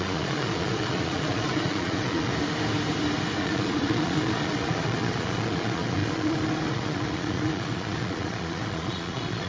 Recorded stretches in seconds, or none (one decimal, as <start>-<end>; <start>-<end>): 2.3-3.4